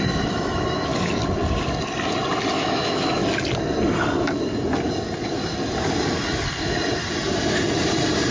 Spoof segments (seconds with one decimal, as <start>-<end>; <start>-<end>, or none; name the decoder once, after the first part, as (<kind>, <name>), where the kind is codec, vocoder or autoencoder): 0.0-0.9 (autoencoder, DAC-VAE); 2.5-3.2